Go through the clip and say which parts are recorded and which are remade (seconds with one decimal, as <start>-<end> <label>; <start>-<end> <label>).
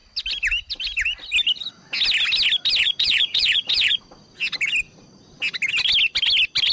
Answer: 0.0-2.8 recorded; 2.8-4.0 remade; 4.0-6.7 recorded